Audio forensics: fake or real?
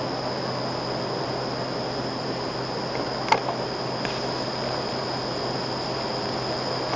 real